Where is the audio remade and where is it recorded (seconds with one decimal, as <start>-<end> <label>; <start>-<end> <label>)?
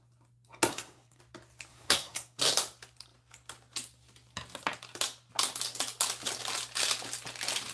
0.0-0.7 recorded; 0.7-1.2 remade; 1.2-1.7 recorded; 1.7-2.4 remade; 2.4-7.7 recorded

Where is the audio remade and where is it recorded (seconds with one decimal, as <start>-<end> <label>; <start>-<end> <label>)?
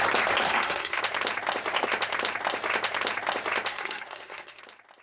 0.0-0.5 recorded; 0.5-1.0 remade; 1.0-3.7 recorded; 3.7-4.6 remade; 4.6-5.0 recorded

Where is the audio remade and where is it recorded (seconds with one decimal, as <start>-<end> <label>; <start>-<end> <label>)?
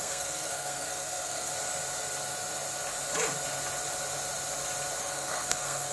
0.0-1.5 remade; 1.5-5.0 recorded; 5.0-5.9 remade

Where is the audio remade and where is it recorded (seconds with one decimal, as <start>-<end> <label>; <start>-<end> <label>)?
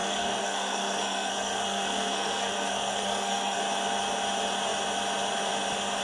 0.0-3.6 remade; 3.6-6.0 recorded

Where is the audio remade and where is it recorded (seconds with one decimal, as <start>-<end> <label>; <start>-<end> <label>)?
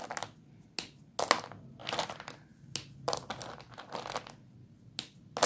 0.0-5.5 recorded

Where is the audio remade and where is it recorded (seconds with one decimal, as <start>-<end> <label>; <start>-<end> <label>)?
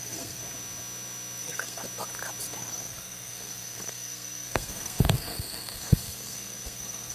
0.0-0.4 remade; 0.4-1.4 recorded; 1.4-1.8 remade; 1.8-2.6 recorded; 2.6-7.1 remade